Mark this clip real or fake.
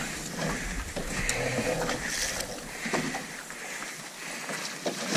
real